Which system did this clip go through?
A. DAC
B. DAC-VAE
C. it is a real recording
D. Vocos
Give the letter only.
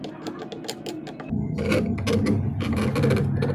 C